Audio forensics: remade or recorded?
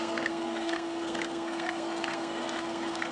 remade